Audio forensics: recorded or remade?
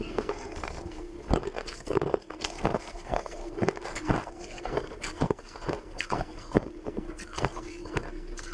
remade